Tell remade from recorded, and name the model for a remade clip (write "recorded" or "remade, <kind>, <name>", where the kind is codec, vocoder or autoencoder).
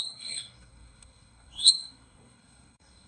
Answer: remade, codec, SNAC